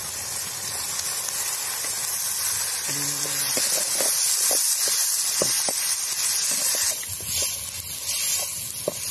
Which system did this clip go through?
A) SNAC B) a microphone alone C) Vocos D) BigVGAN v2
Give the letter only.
B